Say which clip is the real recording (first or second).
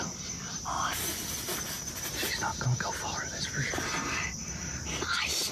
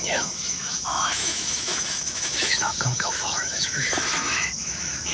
first